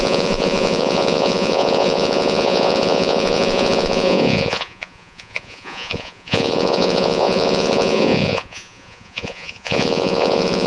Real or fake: fake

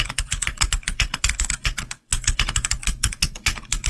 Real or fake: fake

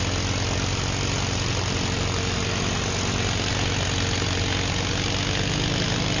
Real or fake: real